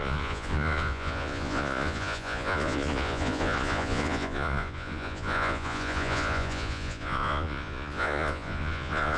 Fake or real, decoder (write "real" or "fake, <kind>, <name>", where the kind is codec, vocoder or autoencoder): fake, vocoder, Vocos